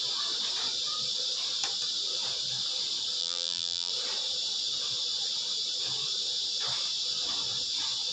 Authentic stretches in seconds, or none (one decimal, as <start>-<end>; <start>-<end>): 0.0-3.2; 3.9-8.1